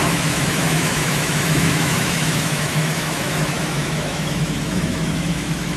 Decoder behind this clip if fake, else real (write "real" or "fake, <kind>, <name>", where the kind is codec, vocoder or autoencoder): fake, autoencoder, DAC-VAE